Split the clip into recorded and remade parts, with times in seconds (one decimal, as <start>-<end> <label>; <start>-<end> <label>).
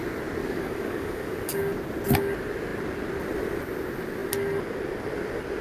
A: 0.0-0.4 recorded; 0.4-1.6 remade; 1.6-5.6 recorded